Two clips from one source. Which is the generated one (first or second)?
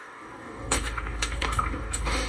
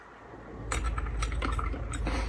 first